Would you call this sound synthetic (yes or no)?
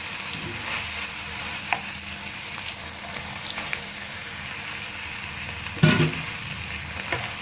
no